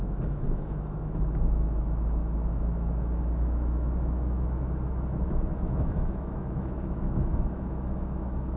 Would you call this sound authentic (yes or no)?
no